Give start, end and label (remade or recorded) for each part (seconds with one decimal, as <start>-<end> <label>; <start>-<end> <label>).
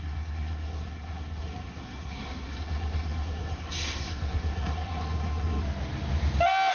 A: 0.0-5.6 remade; 5.6-6.7 recorded